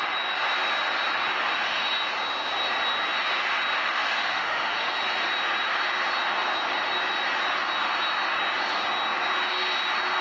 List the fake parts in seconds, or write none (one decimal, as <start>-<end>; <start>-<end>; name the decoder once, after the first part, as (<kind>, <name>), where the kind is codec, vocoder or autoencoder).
1.4-1.9 (autoencoder, DAC-VAE); 3.8-4.9